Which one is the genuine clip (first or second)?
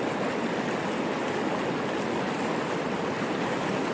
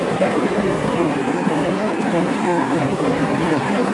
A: first